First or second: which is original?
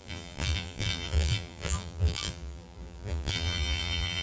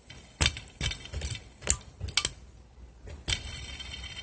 second